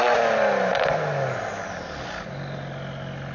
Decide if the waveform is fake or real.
real